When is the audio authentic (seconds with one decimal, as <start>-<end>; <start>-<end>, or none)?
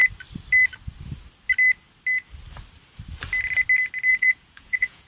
0.0-4.1